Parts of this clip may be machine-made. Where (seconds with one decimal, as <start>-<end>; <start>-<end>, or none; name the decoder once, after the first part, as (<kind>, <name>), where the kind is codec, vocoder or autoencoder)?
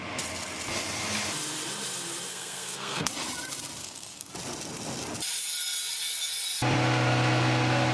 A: 2.3-3.1 (codec, SNAC); 3.8-4.3